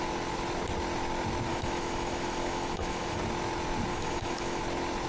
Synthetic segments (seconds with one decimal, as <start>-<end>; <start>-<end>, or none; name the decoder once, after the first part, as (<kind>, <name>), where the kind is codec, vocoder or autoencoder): 1.5-3.2 (autoencoder, DAC-VAE); 3.9-4.6